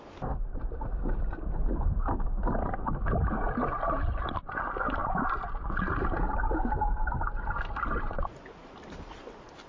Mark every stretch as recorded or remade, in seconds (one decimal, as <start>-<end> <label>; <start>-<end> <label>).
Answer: 0.0-9.7 recorded